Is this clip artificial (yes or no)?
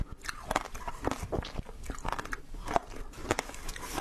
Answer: no